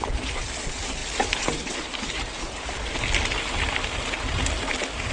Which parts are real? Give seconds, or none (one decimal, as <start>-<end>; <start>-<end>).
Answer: 0.0-5.1